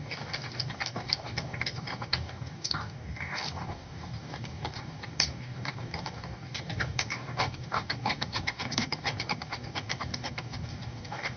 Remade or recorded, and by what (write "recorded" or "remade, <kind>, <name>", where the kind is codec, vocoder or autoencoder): remade, codec, DAC